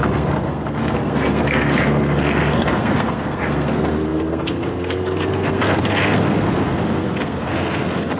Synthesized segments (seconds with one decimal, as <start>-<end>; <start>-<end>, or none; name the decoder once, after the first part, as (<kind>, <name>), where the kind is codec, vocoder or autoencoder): 0.0-8.2 (codec, SNAC)